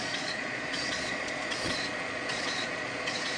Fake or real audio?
fake